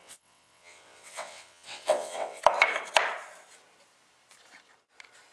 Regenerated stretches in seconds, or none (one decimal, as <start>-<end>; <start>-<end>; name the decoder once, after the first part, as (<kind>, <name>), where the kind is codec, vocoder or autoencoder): 0.0-2.4 (vocoder, WaveNeXt)